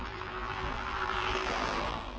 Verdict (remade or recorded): remade